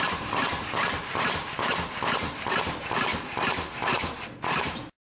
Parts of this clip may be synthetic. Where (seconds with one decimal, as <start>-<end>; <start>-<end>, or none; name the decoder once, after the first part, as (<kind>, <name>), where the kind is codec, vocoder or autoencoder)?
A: none